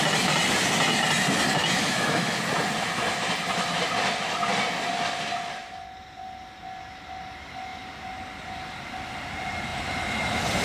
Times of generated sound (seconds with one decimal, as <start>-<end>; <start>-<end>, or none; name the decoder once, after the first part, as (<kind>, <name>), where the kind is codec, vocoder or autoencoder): 1.6-2.4 (autoencoder, DAC-VAE)